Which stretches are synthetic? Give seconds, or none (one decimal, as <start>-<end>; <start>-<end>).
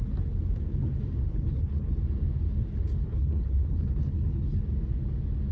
1.3-2.0; 3.0-4.6